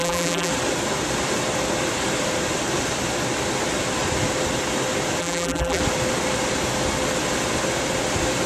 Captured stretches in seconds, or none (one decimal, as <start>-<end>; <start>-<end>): 0.5-5.2; 5.8-8.5